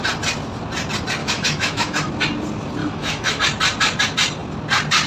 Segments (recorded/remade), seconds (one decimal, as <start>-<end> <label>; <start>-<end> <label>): 0.0-1.2 recorded; 1.2-2.1 remade; 2.1-2.8 recorded; 2.8-3.4 remade; 3.4-5.1 recorded